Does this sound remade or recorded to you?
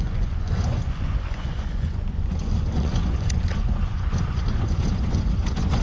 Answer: remade